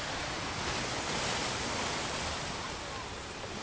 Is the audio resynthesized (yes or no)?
no